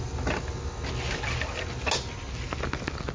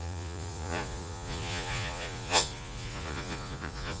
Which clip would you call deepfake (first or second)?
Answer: second